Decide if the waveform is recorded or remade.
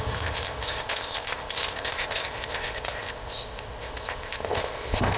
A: remade